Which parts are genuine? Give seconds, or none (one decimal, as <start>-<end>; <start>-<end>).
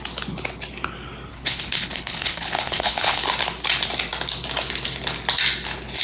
0.0-1.3; 3.2-6.0